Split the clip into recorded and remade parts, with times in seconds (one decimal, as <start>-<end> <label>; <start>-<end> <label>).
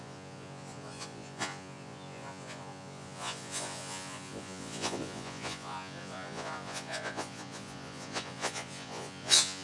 0.0-9.6 remade